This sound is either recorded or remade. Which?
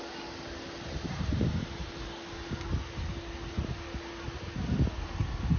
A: recorded